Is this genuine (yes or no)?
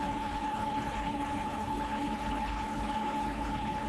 no